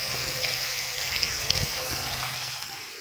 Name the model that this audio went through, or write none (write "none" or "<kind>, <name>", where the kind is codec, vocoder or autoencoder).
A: codec, SNAC